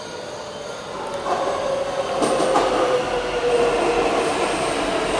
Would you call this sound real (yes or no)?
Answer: yes